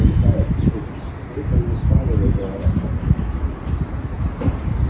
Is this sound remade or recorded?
recorded